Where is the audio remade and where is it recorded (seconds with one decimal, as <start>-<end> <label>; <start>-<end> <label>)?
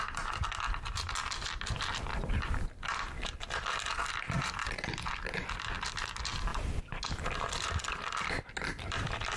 0.0-9.4 recorded